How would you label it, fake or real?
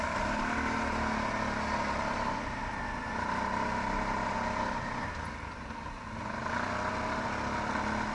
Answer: real